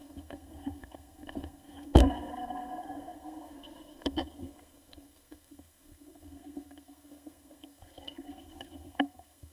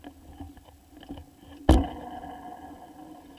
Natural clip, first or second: second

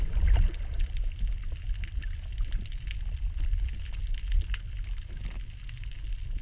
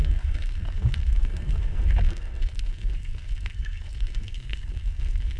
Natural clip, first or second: first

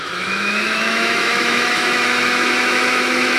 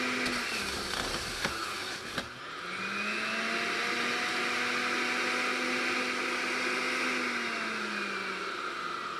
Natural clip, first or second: second